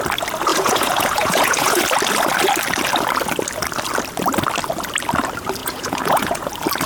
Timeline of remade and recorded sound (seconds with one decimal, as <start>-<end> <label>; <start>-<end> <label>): 0.0-0.5 recorded; 0.5-1.8 remade; 1.8-5.6 recorded; 5.6-6.5 remade; 6.5-6.9 recorded